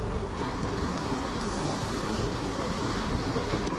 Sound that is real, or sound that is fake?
fake